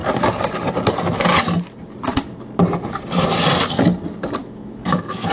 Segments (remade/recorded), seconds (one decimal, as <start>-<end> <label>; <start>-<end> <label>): 0.0-4.4 recorded; 4.4-5.3 remade